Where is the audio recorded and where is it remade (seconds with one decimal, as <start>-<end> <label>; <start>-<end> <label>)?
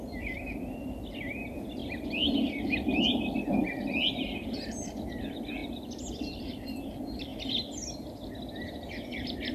0.0-5.6 remade; 5.6-6.1 recorded; 6.1-7.3 remade; 7.3-8.6 recorded; 8.6-9.5 remade